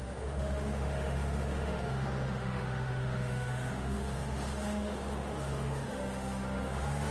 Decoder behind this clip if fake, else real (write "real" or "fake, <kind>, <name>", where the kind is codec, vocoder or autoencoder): fake, autoencoder, DAC-VAE